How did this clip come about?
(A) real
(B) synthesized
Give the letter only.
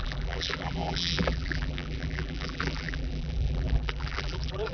B